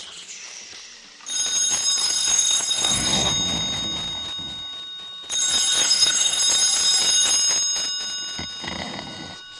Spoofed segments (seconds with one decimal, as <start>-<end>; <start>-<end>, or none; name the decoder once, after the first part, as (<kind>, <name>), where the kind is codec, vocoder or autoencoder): 2.0-3.3 (codec, SNAC); 5.8-6.4